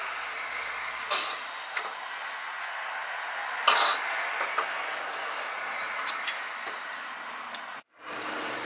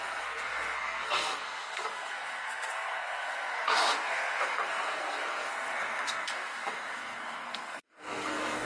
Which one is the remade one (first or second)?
second